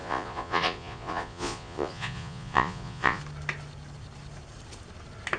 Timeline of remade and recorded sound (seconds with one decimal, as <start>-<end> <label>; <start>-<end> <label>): 0.0-3.2 remade; 3.2-5.4 recorded